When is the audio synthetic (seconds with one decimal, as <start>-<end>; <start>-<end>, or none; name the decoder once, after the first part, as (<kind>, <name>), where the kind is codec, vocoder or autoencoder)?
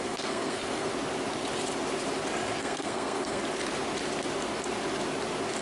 0.0-0.9 (codec, SNAC); 2.6-3.4